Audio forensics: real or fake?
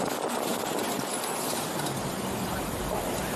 real